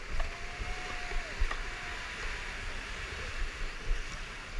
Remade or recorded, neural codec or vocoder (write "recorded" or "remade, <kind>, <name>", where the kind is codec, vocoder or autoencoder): recorded